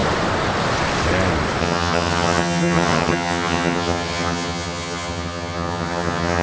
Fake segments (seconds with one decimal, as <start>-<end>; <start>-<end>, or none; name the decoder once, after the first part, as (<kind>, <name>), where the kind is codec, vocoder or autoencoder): 1.6-6.4 (vocoder, HiFi-GAN)